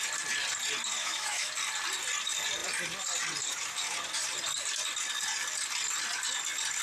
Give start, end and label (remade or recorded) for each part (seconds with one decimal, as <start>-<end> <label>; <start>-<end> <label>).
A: 0.0-1.0 recorded; 1.0-1.5 remade; 1.5-6.8 recorded